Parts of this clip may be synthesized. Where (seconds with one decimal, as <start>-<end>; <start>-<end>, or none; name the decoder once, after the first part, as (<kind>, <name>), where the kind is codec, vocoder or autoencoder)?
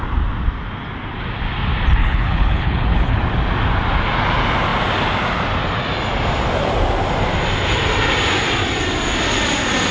2.0-3.2 (codec, HILCodec)